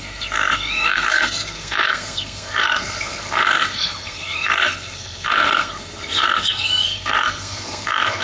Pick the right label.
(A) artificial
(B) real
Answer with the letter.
A